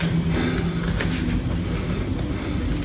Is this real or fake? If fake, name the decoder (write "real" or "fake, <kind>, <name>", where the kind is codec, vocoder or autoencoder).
real